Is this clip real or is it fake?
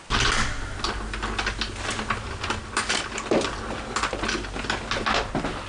real